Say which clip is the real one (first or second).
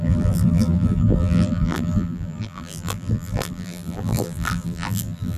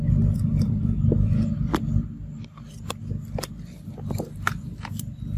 second